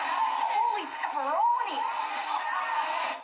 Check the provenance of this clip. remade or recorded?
recorded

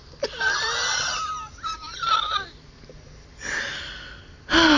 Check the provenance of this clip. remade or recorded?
recorded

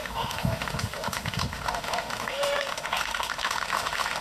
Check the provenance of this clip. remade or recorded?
remade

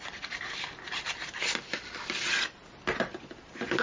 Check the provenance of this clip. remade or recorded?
recorded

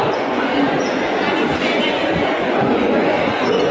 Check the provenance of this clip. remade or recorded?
remade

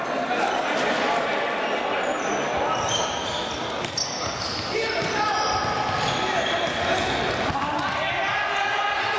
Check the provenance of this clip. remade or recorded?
recorded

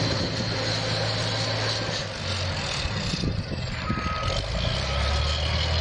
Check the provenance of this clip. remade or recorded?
recorded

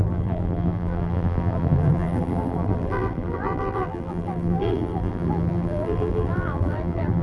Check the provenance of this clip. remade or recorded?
remade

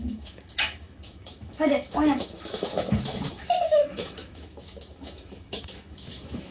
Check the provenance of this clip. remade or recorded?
remade